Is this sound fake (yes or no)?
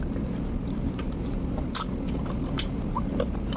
no